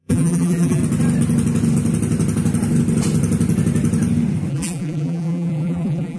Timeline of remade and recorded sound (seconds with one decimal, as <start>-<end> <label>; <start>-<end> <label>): 0.0-0.8 remade; 0.8-4.5 recorded; 4.5-6.2 remade